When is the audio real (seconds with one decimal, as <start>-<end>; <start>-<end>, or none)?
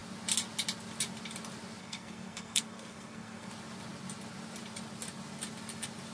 0.0-1.8; 3.5-6.1